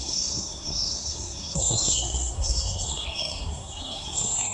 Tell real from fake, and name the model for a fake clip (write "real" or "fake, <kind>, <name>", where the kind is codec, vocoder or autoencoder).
fake, codec, SNAC